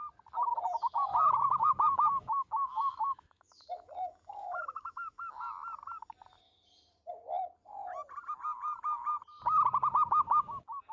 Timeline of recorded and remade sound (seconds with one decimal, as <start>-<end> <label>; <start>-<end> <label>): 0.0-0.7 recorded; 0.7-5.4 remade; 5.4-10.9 recorded

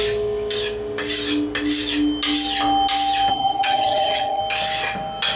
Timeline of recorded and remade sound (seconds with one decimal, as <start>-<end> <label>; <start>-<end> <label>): 0.0-3.3 recorded; 3.3-4.4 remade; 4.4-5.4 recorded

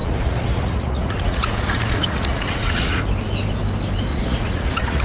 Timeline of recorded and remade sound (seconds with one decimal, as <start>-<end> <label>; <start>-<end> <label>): 0.0-3.0 remade; 3.0-4.1 recorded; 4.1-5.0 remade